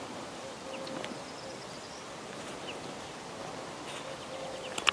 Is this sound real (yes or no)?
yes